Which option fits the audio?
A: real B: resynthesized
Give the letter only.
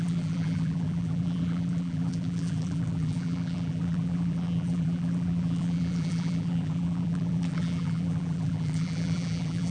B